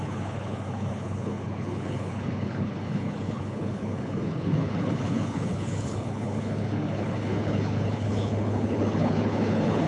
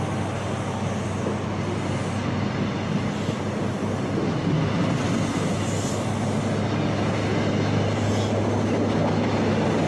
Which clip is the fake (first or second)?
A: first